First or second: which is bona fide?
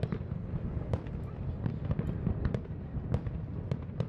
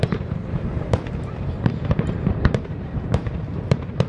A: first